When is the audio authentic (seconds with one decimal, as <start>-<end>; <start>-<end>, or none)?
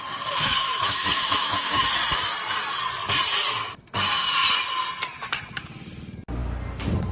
0.0-0.4; 1.8-7.1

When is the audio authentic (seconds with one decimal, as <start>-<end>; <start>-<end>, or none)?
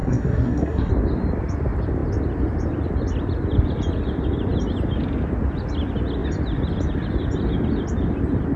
0.9-8.6